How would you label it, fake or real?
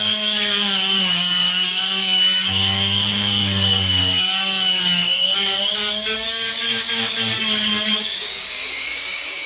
fake